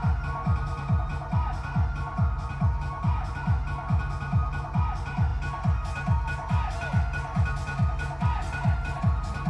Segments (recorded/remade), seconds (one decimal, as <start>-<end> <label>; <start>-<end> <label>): 0.0-9.5 recorded